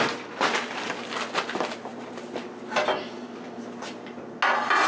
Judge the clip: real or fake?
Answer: real